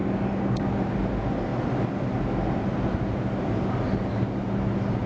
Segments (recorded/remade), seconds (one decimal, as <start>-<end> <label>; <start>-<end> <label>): 0.0-5.1 recorded